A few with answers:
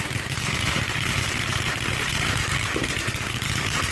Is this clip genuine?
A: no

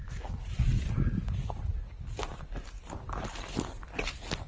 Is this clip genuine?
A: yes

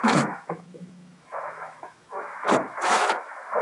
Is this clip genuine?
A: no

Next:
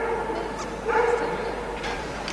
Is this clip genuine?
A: yes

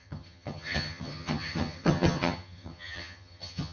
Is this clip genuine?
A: no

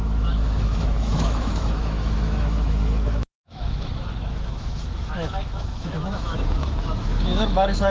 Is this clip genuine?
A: no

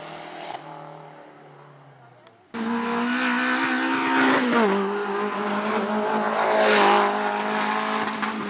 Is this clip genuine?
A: yes